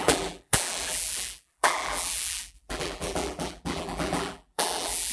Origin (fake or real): fake